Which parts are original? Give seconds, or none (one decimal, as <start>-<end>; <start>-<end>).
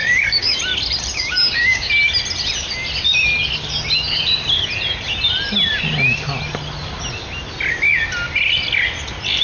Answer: 0.6-1.1; 1.9-9.4